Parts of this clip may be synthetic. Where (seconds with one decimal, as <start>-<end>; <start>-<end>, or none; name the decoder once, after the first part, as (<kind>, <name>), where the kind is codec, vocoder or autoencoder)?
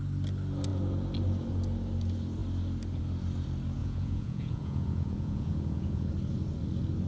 3.8-6.1 (vocoder, Vocos)